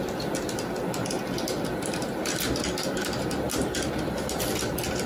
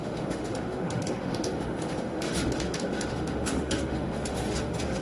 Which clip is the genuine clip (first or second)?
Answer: first